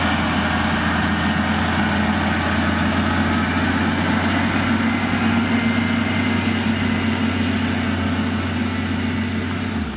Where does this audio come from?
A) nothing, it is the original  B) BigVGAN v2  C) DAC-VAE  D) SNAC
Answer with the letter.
A